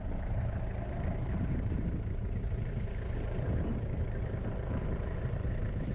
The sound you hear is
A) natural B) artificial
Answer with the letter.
B